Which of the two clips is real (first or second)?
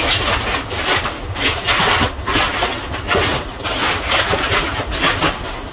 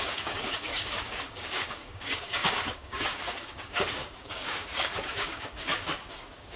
first